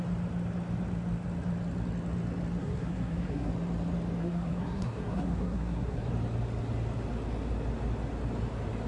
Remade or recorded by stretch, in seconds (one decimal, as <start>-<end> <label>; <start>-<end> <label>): 0.0-2.6 recorded; 2.6-3.5 remade; 3.5-4.2 recorded; 4.2-6.1 remade; 6.1-8.9 recorded